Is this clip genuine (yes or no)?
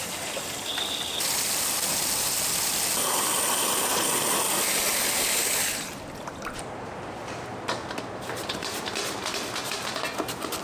yes